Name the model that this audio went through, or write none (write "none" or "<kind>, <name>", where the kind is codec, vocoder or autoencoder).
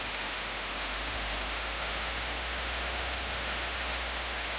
autoencoder, DAC-VAE